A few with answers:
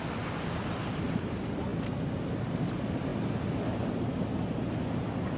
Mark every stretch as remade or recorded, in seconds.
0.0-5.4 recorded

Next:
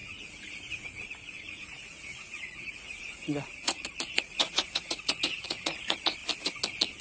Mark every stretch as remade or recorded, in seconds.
0.0-6.2 remade; 6.2-7.0 recorded